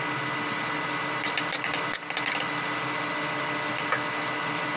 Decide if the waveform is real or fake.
real